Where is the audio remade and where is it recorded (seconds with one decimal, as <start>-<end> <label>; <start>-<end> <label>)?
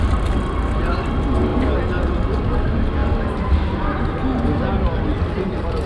0.0-3.0 recorded; 3.0-4.0 remade; 4.0-5.1 recorded; 5.1-5.9 remade